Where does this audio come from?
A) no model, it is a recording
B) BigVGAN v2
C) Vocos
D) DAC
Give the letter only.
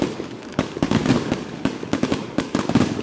D